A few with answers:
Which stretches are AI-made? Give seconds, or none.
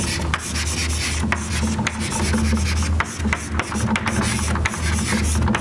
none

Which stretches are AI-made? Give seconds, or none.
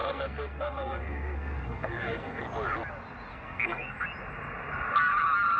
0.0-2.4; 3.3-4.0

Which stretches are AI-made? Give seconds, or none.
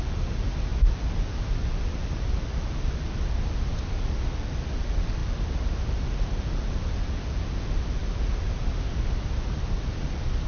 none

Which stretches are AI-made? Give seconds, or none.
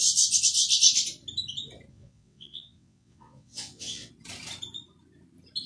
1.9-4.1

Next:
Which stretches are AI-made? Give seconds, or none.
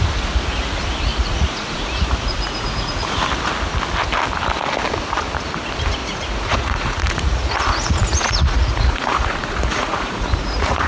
1.1-3.2; 6.0-10.9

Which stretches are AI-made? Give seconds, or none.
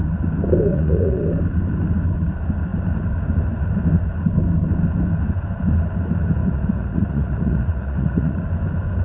0.7-1.2; 6.4-8.4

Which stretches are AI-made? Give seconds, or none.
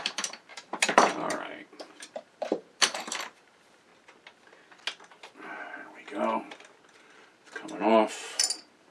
0.0-3.9; 7.1-8.9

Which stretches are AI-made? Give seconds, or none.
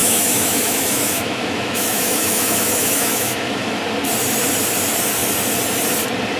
0.0-3.8